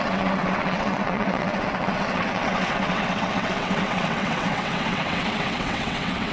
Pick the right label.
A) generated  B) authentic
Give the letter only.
A